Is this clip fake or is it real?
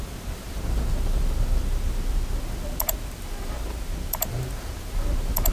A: real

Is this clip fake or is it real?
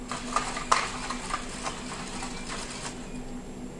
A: real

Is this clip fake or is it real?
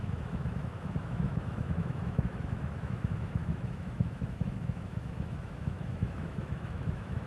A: fake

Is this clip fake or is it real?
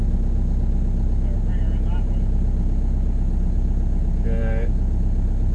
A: real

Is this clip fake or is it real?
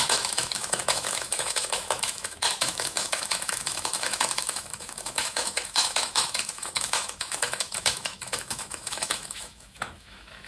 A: fake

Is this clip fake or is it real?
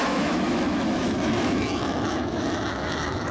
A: fake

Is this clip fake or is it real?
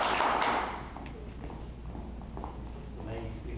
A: real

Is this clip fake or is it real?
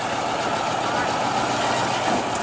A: real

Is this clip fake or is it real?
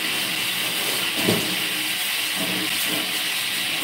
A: real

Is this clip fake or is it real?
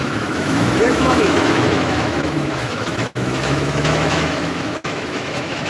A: fake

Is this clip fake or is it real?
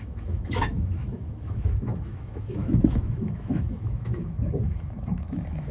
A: fake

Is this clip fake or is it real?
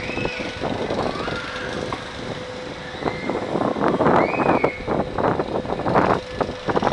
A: real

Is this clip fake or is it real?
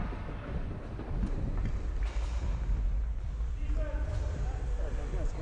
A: real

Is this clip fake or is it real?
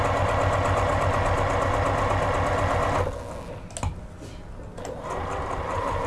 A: real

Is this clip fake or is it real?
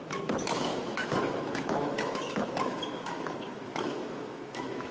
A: fake